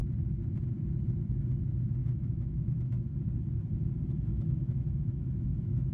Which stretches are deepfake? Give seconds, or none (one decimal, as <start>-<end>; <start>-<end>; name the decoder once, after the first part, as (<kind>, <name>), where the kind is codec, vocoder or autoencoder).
2.0-2.8 (autoencoder, DAC-VAE); 4.3-5.9